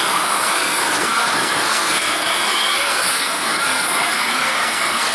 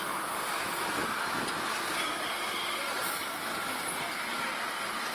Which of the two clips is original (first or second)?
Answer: second